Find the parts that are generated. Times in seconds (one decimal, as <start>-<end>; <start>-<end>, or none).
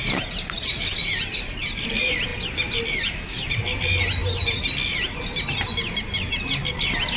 none